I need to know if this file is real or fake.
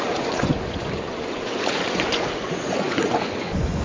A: fake